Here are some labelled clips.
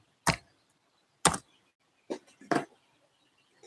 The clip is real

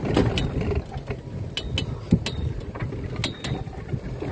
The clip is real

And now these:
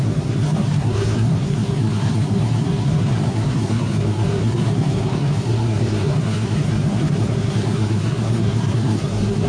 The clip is fake